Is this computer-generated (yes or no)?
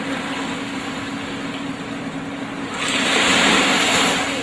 no